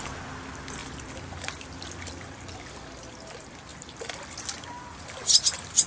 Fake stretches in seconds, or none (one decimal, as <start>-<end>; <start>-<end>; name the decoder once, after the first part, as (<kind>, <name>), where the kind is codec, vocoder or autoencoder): none